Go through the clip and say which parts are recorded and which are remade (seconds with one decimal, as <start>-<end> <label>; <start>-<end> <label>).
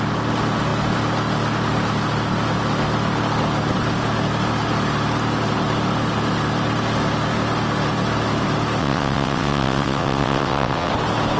0.0-8.8 recorded; 8.8-10.9 remade; 10.9-11.4 recorded